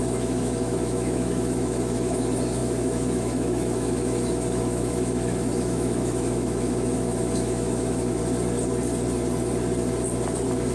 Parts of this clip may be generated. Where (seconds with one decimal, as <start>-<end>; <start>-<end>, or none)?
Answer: 0.0-8.2